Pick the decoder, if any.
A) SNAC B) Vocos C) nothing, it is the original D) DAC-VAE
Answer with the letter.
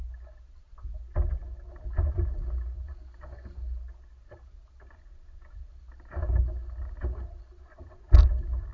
C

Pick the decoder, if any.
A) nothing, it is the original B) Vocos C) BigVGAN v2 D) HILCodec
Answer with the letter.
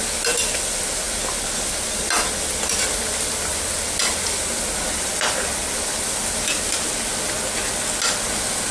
A